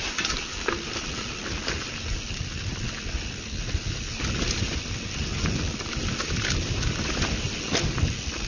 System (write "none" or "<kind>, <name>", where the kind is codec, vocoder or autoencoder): none